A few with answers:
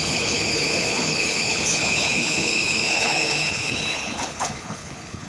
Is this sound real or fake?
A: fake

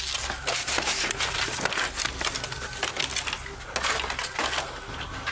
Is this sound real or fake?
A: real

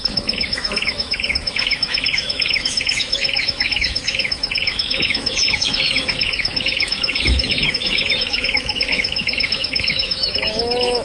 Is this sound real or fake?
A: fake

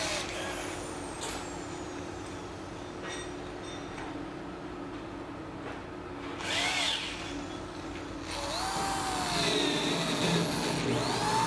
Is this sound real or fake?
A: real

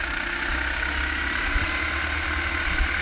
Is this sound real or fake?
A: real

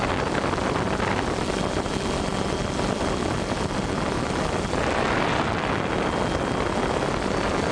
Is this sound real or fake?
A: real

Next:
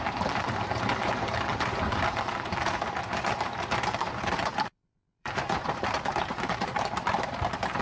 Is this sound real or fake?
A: fake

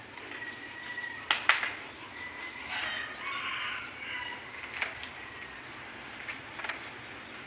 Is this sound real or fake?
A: real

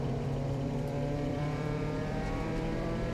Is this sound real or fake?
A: fake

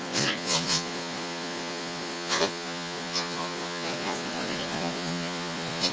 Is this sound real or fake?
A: fake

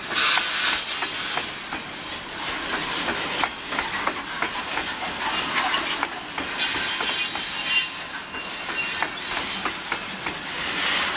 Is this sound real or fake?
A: real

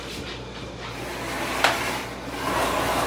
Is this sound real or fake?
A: real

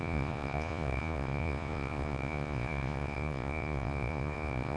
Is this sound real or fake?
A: fake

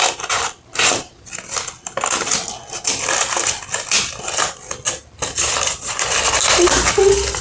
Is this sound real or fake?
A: real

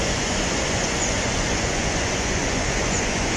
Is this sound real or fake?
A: fake